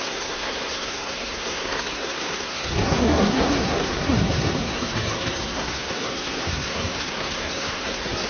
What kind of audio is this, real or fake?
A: fake